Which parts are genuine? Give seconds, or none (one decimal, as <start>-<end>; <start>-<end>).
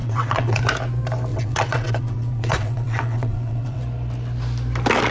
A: 0.6-1.3; 3.8-5.1